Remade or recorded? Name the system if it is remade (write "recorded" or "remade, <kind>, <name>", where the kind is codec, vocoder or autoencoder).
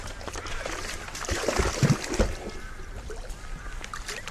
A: recorded